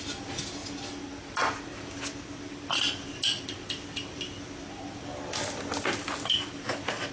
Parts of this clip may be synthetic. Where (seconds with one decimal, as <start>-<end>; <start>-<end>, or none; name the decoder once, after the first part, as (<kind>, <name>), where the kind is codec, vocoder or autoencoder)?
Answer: none